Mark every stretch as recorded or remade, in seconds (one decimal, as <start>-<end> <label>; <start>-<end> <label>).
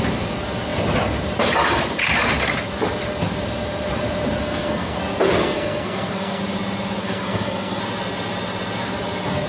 0.0-4.4 recorded; 4.4-5.0 remade; 5.0-5.4 recorded; 5.4-6.4 remade; 6.4-7.0 recorded; 7.0-7.8 remade; 7.8-9.5 recorded